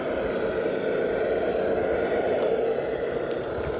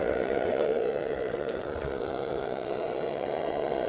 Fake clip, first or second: second